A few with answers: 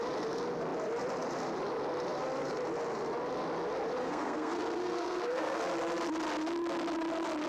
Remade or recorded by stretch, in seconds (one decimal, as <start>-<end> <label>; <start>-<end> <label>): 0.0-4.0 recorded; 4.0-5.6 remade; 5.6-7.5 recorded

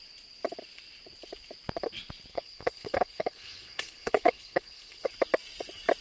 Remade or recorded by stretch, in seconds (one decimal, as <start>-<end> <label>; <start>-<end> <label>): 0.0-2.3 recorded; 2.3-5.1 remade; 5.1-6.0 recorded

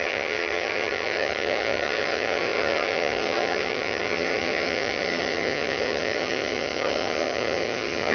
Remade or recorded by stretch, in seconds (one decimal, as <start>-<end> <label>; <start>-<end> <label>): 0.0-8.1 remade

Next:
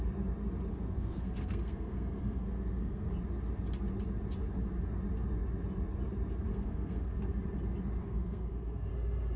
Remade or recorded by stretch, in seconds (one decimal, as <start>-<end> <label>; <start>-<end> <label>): 0.0-0.7 recorded; 0.7-3.1 remade; 3.1-6.5 recorded; 6.5-7.2 remade; 7.2-8.0 recorded; 8.0-8.9 remade; 8.9-9.4 recorded